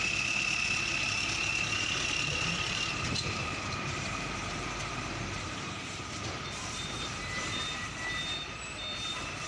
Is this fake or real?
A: fake